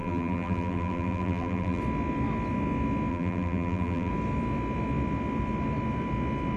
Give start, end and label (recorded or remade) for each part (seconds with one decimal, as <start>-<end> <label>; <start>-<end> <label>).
0.0-1.8 remade; 1.8-3.1 recorded; 3.1-4.1 remade; 4.1-6.6 recorded